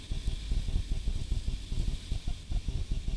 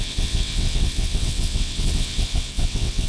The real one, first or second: first